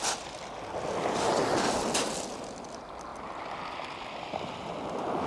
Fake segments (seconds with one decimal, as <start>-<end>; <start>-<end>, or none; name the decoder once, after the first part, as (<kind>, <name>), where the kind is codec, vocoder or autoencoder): 3.1-3.6 (vocoder, BigVGAN v2)